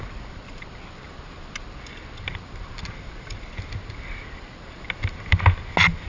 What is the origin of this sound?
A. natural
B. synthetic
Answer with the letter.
A